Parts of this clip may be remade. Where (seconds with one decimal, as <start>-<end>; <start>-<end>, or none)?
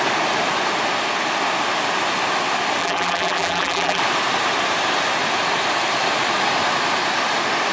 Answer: 2.8-4.0